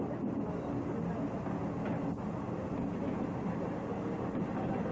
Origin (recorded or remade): recorded